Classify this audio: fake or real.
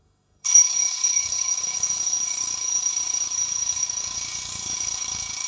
fake